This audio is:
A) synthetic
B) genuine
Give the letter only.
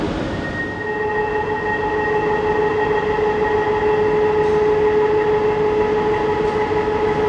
B